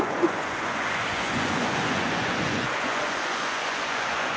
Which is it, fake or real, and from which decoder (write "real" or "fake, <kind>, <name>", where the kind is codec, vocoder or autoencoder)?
fake, vocoder, Vocos